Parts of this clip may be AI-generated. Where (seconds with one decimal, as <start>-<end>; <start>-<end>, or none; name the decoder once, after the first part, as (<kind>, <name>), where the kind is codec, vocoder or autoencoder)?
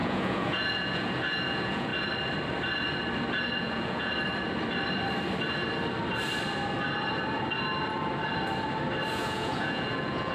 0.0-1.9 (vocoder, Vocos); 3.6-4.1; 9.1-10.3